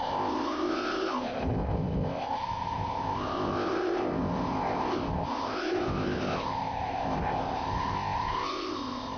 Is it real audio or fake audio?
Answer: fake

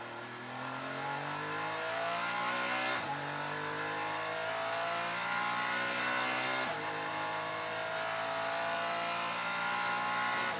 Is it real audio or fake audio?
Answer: real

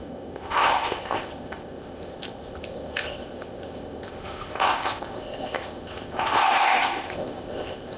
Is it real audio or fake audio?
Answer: fake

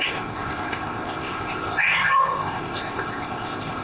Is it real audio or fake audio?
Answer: fake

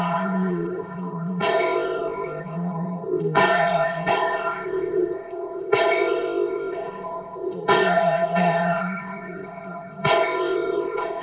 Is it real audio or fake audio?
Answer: fake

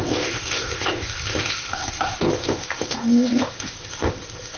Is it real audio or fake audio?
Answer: fake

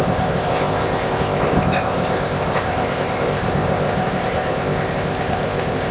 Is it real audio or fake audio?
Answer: fake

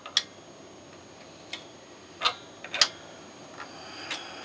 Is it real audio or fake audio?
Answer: real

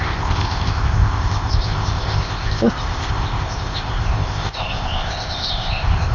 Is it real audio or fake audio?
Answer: fake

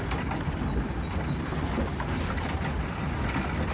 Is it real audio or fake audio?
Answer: real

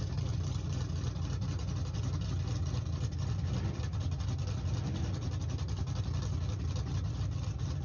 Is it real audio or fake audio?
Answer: real